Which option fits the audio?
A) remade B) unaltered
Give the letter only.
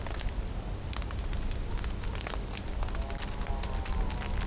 B